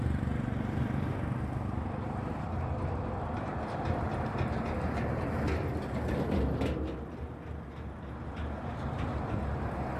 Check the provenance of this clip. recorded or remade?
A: recorded